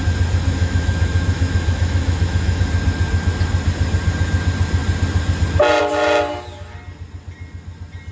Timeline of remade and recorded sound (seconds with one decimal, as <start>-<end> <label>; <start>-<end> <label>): 0.0-0.6 recorded; 0.6-2.6 remade; 2.6-8.1 recorded